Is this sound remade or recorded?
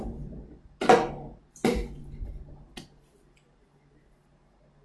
recorded